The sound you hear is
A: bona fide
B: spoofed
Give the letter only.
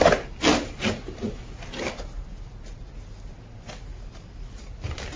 A